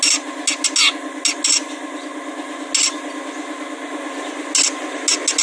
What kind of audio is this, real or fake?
real